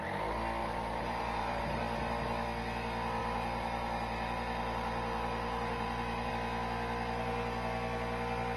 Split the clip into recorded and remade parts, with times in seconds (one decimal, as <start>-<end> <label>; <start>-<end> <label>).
0.0-0.6 recorded; 0.6-1.6 remade; 1.6-3.2 recorded; 3.2-6.3 remade; 6.3-8.6 recorded